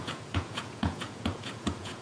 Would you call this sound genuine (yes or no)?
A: no